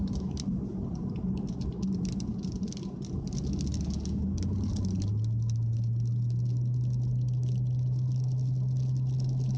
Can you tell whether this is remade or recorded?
recorded